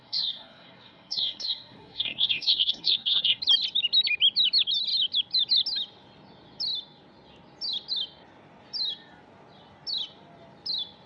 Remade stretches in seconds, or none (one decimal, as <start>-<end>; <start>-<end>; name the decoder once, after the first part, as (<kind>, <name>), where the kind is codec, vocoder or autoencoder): 0.0-3.4 (codec, SNAC)